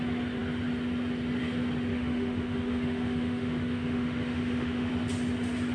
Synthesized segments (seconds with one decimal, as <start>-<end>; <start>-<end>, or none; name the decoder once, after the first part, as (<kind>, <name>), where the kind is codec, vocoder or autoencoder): 1.9-4.9 (autoencoder, DAC-VAE)